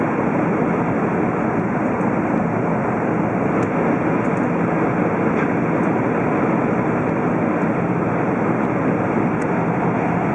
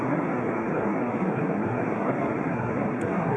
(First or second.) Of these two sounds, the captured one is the first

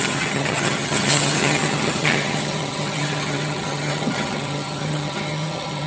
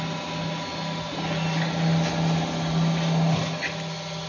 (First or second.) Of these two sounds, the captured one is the second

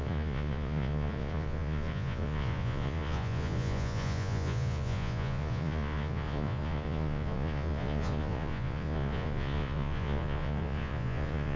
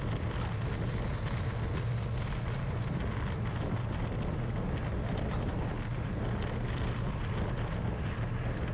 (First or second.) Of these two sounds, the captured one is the second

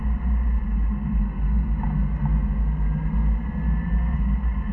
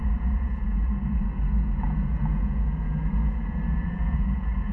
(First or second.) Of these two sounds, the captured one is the first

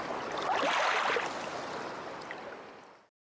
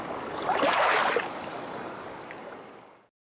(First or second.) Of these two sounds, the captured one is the first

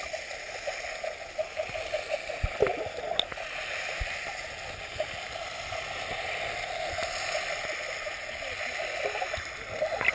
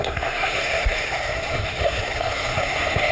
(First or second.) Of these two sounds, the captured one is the first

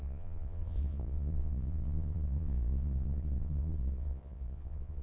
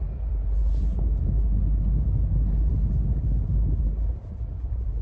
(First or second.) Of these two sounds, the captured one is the second